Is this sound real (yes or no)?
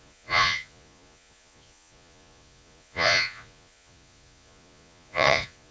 no